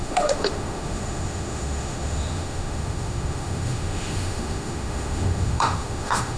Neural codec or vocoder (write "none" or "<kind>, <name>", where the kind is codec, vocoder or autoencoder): autoencoder, DAC-VAE